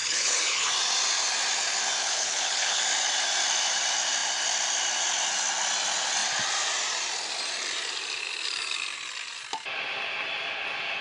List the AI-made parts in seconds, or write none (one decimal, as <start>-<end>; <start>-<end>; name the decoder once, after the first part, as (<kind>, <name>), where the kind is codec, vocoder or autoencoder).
0.0-0.7 (codec, HILCodec); 2.0-2.8